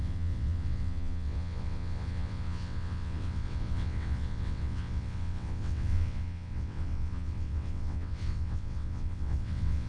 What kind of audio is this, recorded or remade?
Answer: remade